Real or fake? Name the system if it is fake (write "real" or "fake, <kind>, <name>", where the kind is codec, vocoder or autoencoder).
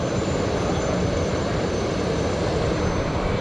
fake, vocoder, BigVGAN v2